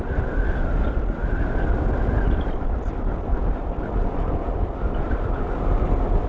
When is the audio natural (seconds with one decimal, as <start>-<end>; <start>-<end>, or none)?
0.0-6.3